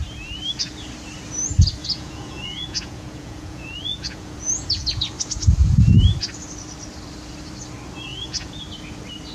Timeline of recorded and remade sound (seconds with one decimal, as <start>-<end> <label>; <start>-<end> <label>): 0.0-1.8 recorded; 1.8-5.1 remade; 5.1-8.1 recorded; 8.1-8.6 remade; 8.6-9.3 recorded